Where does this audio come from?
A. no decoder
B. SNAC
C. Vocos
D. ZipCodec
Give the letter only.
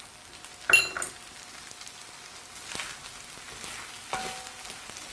A